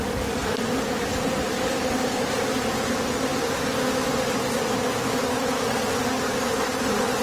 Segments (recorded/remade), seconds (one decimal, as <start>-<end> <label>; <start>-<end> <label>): 0.0-7.2 recorded